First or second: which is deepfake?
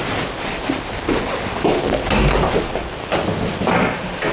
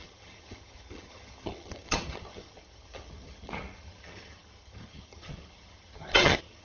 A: second